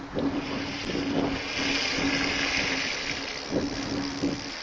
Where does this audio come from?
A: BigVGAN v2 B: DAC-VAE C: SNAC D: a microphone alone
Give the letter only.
D